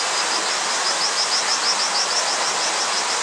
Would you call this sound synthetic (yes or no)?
no